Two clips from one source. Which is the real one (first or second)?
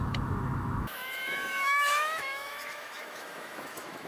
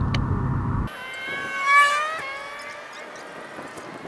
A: second